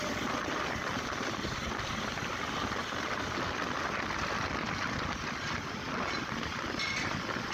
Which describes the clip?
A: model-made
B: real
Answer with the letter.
B